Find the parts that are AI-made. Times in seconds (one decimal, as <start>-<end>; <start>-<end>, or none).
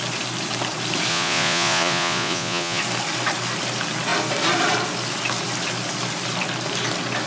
1.1-2.8